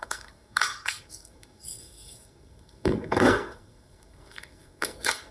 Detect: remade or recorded remade